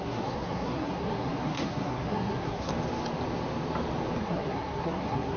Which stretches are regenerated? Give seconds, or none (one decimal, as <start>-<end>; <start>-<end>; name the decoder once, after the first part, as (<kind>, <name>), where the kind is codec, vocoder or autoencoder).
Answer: 0.0-2.7 (codec, SNAC); 4.2-5.4